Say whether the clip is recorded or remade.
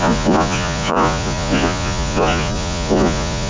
remade